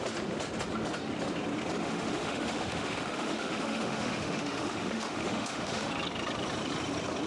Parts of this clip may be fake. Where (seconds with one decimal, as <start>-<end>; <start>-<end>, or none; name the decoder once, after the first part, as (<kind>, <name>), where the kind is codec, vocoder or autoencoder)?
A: 1.8-5.9 (autoencoder, DAC-VAE)

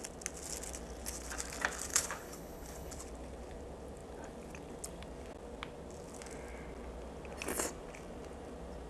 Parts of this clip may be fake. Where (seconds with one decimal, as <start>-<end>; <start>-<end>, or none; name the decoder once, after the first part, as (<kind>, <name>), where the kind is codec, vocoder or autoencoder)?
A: 1.9-2.9 (codec, HILCodec)

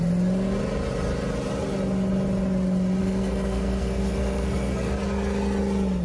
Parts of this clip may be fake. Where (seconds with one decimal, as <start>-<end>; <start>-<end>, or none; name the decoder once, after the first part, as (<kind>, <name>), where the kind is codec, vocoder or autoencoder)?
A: 3.0-4.9 (codec, SNAC)

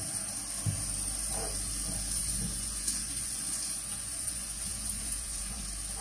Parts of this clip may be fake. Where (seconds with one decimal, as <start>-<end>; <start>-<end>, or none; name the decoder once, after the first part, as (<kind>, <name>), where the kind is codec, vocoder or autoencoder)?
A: 2.2-5.6 (vocoder, Vocos)

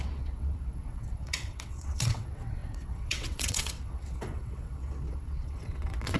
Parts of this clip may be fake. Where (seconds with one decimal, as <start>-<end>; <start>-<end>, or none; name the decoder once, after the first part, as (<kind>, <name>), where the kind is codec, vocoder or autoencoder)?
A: 0.0-6.2 (vocoder, WaveNeXt)

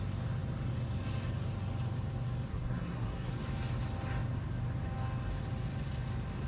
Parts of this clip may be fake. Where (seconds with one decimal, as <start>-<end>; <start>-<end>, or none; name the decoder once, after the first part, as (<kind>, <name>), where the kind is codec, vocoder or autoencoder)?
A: 2.5-3.3 (codec, SNAC)

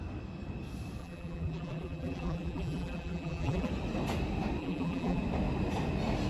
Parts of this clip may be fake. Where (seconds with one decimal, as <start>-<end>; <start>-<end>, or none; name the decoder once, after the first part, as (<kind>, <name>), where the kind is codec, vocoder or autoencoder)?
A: 1.0-3.7 (vocoder, BigVGAN v2); 4.6-5.2